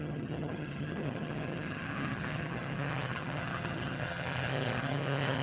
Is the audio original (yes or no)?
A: no